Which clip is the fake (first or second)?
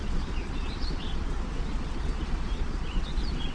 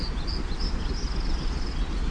first